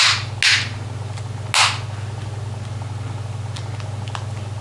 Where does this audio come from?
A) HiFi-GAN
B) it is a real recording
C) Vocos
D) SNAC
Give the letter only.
B